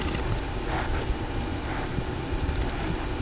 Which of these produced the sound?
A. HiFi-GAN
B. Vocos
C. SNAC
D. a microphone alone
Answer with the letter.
D